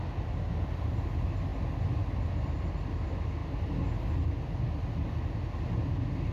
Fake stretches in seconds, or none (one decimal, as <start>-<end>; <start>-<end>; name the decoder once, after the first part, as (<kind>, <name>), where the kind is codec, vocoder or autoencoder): none